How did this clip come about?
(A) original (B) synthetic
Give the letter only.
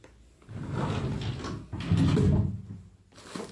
A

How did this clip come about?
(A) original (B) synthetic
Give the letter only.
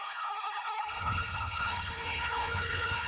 B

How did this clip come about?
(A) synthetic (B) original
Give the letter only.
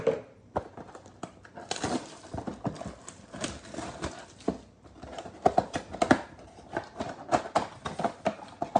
B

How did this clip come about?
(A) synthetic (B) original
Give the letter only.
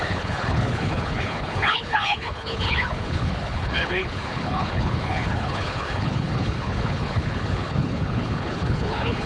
A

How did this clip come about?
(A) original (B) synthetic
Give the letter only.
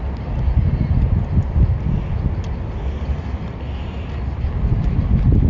A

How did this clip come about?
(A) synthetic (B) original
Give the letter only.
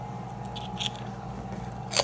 B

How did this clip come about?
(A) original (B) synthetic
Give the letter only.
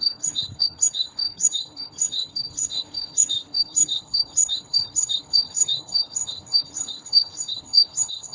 B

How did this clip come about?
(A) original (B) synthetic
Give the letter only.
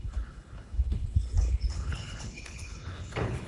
B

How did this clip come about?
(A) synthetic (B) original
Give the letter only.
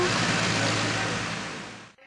B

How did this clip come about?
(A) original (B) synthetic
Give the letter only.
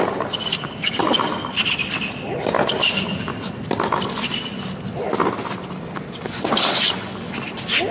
A